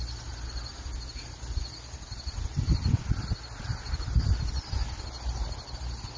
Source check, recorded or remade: recorded